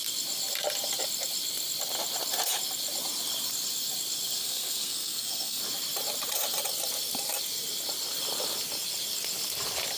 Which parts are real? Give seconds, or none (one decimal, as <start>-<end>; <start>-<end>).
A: 0.0-4.4; 5.6-10.0